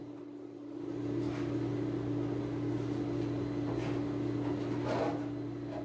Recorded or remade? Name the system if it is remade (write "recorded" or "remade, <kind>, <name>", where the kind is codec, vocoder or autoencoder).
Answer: recorded